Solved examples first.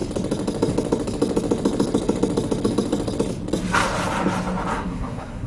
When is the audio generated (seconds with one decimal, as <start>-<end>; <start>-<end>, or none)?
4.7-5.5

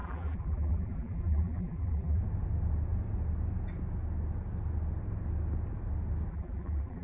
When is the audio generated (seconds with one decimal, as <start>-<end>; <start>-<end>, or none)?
0.0-2.2; 6.3-7.0

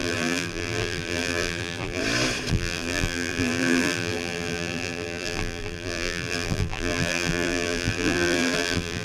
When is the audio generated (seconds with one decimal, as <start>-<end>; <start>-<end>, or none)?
0.0-2.0; 2.5-9.0

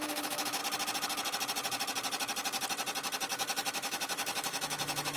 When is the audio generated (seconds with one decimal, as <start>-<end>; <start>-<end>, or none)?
0.0-0.6; 3.3-5.2

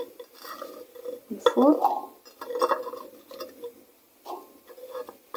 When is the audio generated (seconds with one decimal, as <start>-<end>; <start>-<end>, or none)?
none

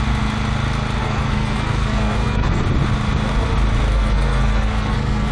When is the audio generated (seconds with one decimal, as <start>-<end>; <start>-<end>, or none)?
1.0-2.6; 3.9-5.3

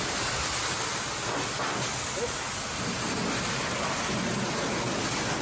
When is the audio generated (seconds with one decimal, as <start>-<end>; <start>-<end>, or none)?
none

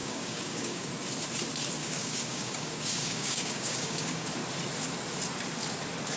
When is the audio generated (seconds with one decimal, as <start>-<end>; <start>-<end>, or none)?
0.0-0.9; 1.8-4.3